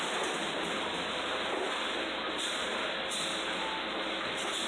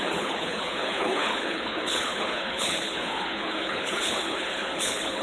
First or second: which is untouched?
first